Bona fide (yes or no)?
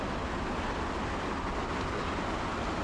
yes